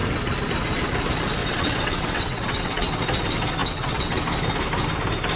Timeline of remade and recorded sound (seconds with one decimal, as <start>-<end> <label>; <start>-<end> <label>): 0.0-1.4 recorded; 1.4-3.0 remade; 3.0-3.6 recorded; 3.6-4.2 remade; 4.2-5.4 recorded